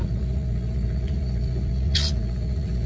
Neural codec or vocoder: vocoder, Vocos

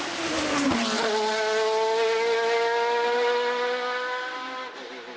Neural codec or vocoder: none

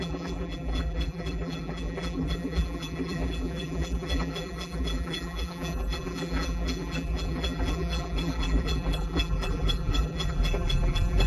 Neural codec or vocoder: vocoder, BigVGAN v2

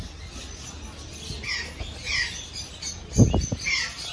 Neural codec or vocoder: none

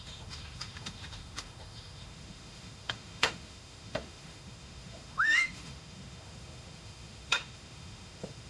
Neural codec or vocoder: autoencoder, DAC-VAE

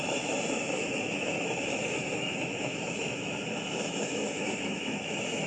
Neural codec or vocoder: autoencoder, DAC-VAE